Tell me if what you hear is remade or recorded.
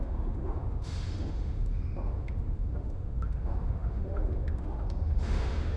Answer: remade